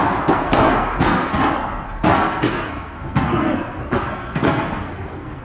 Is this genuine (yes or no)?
no